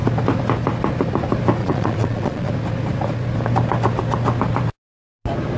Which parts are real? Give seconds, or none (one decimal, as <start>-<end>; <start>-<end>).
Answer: 0.0-1.6; 2.5-5.6